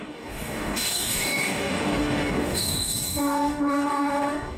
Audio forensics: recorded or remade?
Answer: remade